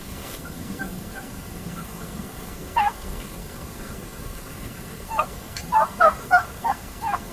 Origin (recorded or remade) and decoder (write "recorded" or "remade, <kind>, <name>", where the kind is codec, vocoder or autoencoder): remade, codec, SNAC